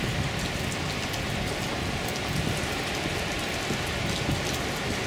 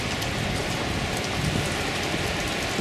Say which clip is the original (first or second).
first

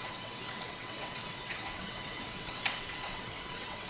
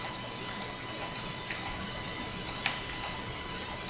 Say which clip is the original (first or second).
second